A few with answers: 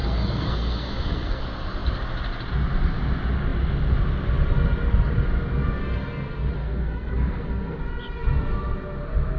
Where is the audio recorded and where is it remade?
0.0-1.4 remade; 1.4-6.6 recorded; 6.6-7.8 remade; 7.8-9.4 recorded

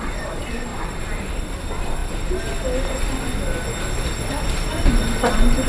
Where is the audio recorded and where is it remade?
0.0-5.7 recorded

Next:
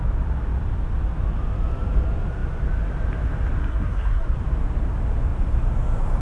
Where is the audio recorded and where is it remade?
0.0-3.7 recorded; 3.7-4.4 remade; 4.4-6.2 recorded

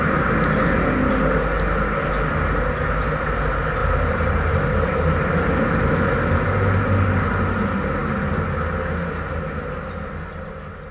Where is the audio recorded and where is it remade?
0.0-3.8 recorded; 3.8-5.7 remade; 5.7-10.9 recorded

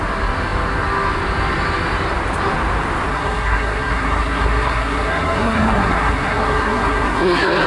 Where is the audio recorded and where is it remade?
0.0-3.1 recorded; 3.1-7.7 remade

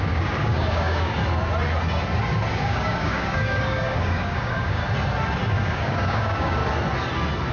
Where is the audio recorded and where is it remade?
0.0-1.2 remade; 1.2-2.6 recorded; 2.6-4.8 remade; 4.8-5.5 recorded; 5.5-6.6 remade; 6.6-7.5 recorded

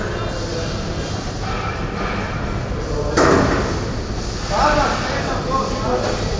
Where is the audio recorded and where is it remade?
0.0-0.5 recorded; 0.5-1.4 remade; 1.4-6.4 recorded